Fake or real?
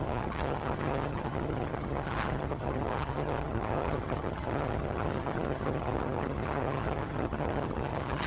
fake